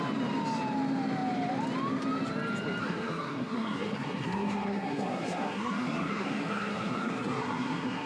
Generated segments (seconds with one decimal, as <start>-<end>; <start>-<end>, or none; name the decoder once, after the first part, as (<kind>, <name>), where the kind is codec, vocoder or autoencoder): 2.8-8.1 (codec, SNAC)